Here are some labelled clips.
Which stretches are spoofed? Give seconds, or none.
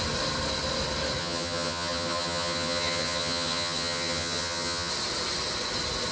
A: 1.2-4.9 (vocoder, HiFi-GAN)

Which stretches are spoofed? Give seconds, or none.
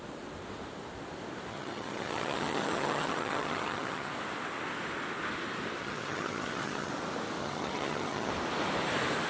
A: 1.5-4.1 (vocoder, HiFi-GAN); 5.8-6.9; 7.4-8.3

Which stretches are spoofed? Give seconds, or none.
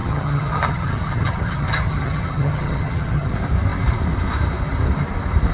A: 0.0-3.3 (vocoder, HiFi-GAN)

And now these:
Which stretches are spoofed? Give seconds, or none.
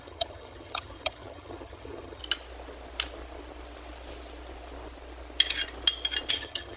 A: 0.0-2.2 (vocoder, HiFi-GAN); 6.3-6.8